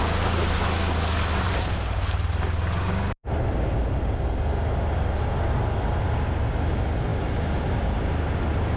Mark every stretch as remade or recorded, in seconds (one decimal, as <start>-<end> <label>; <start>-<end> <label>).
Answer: 0.0-8.8 recorded